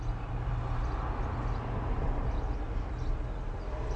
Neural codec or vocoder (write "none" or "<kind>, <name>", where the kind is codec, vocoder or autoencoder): none